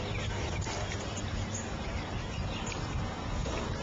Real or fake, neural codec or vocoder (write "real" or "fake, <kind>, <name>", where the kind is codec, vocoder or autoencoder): real